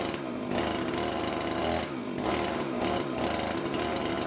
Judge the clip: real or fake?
real